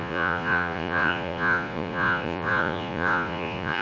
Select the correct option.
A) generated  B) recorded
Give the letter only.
A